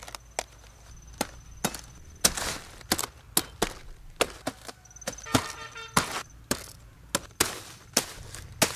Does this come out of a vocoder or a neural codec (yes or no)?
no